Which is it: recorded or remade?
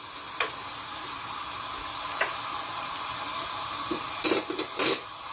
recorded